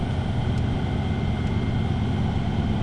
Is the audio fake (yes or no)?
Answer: no